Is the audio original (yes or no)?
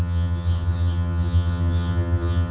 no